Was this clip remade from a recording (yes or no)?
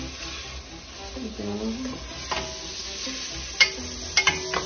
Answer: no